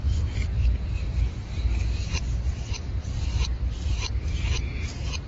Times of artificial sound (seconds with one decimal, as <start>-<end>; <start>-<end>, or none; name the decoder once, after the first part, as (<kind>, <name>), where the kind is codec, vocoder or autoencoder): none